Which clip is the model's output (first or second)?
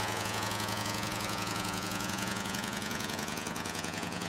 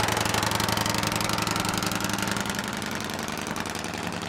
first